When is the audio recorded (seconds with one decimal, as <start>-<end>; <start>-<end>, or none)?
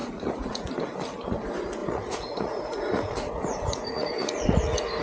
0.7-1.8